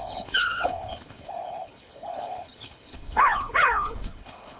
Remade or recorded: remade